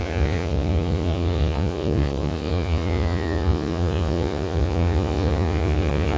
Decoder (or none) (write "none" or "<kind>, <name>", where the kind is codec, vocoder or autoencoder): vocoder, Vocos